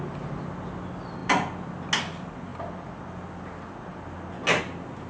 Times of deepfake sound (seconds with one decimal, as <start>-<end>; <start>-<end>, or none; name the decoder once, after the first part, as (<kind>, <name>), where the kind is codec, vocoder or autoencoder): none